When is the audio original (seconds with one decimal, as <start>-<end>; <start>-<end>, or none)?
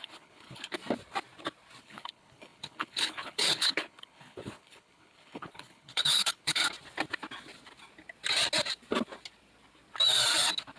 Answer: 0.8-1.8; 6.6-10.8